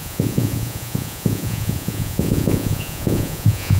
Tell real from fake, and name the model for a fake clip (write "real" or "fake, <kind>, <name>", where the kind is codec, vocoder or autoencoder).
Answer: fake, vocoder, Vocos